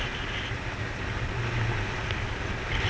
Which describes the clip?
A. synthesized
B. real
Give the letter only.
B